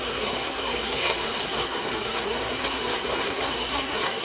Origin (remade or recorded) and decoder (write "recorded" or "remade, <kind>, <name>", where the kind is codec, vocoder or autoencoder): remade, codec, SNAC